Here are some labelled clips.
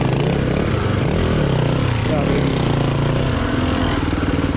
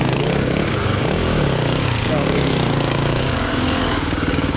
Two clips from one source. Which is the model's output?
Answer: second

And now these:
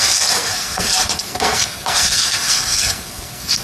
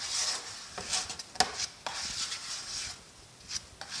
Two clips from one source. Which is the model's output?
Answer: first